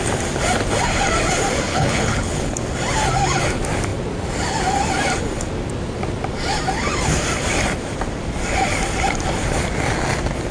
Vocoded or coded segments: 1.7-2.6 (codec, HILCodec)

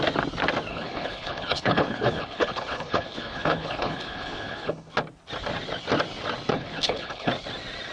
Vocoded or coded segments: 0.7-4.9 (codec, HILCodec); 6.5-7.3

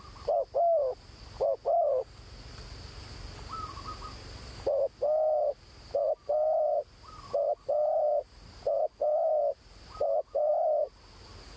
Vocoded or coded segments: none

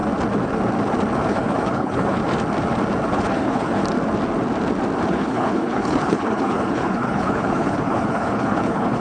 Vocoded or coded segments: 1.3-2.2 (codec, HILCodec); 3.1-3.8; 5.1-9.0

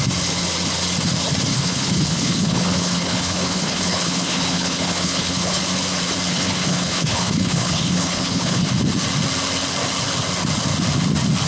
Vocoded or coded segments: 1.5-5.6 (codec, HILCodec); 6.3-8.7